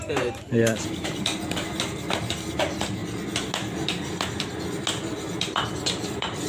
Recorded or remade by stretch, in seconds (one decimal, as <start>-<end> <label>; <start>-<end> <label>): 0.0-1.3 remade; 1.3-2.5 recorded; 2.5-3.0 remade; 3.0-6.1 recorded; 6.1-6.5 remade